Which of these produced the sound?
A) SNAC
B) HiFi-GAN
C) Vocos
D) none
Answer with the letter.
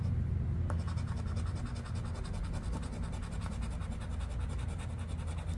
D